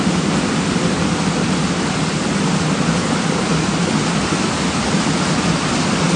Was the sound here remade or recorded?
recorded